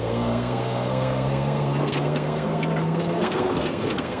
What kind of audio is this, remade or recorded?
remade